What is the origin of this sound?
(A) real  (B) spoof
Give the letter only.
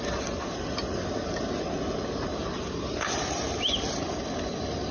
A